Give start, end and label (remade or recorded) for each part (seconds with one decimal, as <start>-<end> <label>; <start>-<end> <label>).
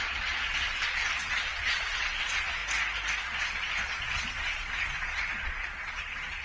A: 0.0-2.6 remade; 2.6-3.2 recorded; 3.2-6.4 remade